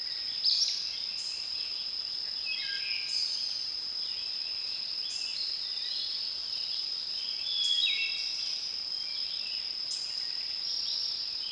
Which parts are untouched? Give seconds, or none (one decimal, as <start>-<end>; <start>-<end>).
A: 0.0-5.3; 5.9-6.4; 11.1-11.5